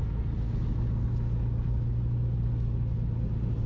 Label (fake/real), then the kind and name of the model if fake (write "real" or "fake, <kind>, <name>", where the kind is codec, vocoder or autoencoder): real